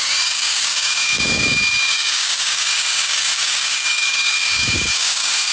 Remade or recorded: remade